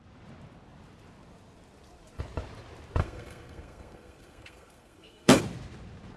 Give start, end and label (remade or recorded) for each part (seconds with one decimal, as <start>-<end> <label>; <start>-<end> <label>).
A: 0.0-3.0 recorded; 3.0-5.4 remade; 5.4-6.2 recorded